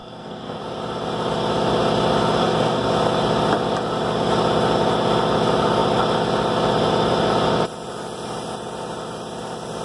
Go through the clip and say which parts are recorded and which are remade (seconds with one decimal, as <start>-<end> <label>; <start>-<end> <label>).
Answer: 0.0-0.6 remade; 0.6-2.4 recorded; 2.4-2.9 remade; 2.9-9.8 recorded

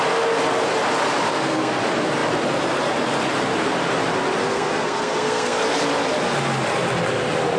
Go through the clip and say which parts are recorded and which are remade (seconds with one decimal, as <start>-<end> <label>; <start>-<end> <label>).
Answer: 0.0-1.3 recorded; 1.3-1.8 remade; 1.8-4.4 recorded; 4.4-5.6 remade; 5.6-7.6 recorded